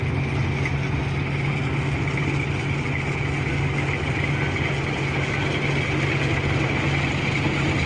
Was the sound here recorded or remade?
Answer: recorded